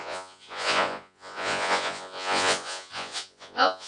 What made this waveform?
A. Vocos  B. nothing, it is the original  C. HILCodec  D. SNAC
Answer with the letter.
A